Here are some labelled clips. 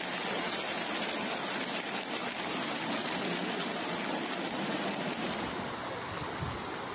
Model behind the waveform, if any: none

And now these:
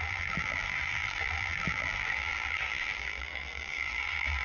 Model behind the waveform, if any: vocoder, BigVGAN v2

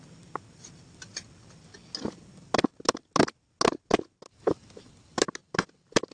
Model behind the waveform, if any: none